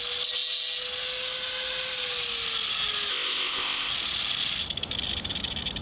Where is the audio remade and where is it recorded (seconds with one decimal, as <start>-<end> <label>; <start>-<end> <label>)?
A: 0.0-3.1 recorded; 3.1-3.9 remade; 3.9-5.8 recorded